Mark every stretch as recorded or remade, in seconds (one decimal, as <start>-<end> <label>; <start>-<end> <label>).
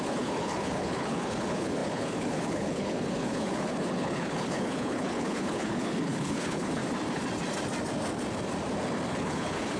0.0-6.8 remade; 6.8-9.1 recorded; 9.1-9.8 remade